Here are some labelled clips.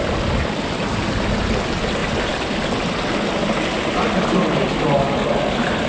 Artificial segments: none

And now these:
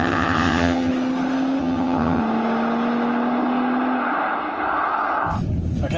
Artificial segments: 0.0-0.9; 1.6-2.2

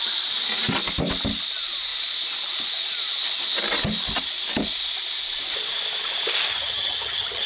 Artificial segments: 6.5-7.5

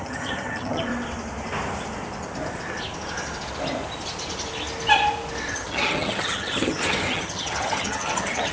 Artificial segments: 0.0-0.9; 5.5-8.5

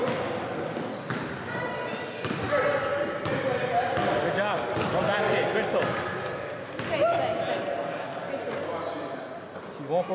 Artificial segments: none

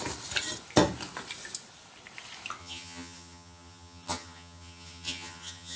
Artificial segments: 2.6-5.8

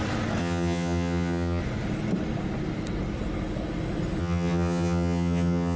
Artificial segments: 0.4-1.6; 4.2-5.8